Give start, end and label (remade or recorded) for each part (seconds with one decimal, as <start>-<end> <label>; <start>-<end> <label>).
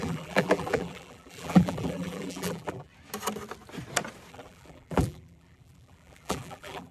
0.0-2.9 remade; 2.9-4.3 recorded; 4.3-6.9 remade